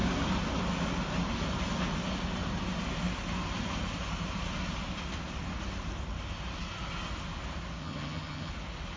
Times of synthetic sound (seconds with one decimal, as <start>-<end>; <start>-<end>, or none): 7.8-8.5